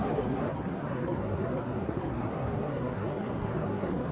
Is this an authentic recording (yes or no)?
no